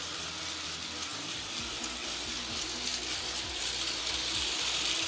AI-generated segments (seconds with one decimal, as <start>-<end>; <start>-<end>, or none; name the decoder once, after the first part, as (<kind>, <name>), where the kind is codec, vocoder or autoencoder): 1.1-2.3 (vocoder, BigVGAN v2)